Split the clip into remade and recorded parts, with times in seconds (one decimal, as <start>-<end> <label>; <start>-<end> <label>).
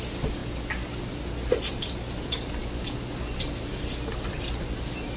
0.0-5.2 recorded